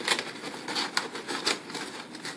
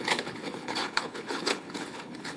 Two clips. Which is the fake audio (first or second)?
second